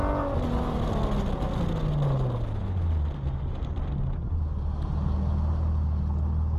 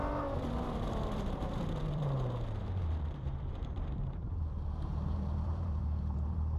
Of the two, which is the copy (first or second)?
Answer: second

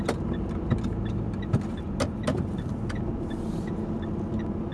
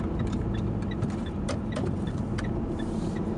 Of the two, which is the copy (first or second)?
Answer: second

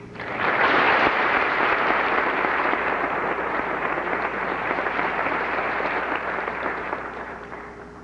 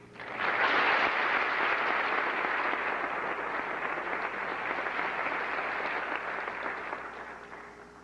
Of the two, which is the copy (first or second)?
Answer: first